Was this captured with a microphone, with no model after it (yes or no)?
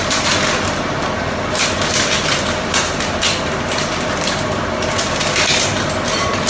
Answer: yes